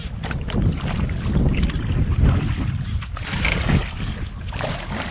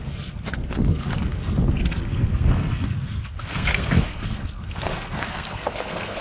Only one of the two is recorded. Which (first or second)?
first